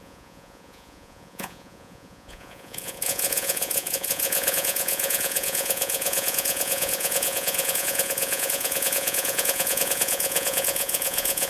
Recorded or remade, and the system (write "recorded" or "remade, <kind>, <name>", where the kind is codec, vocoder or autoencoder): remade, vocoder, Vocos